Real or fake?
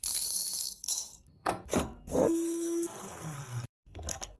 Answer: fake